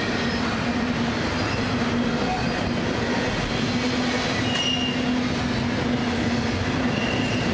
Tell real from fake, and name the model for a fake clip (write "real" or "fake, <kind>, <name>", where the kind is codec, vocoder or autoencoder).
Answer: real